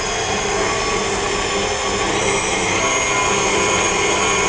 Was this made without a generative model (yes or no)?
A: yes